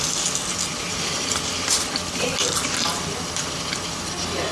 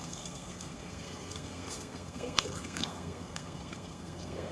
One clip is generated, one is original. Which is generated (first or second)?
second